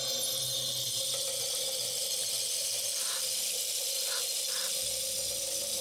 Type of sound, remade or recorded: recorded